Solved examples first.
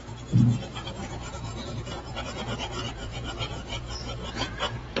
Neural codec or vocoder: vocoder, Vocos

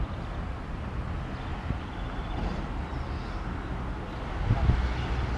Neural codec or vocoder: none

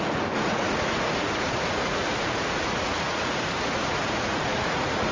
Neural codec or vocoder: vocoder, Vocos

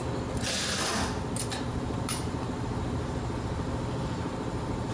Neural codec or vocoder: none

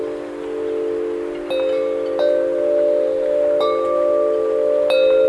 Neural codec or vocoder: none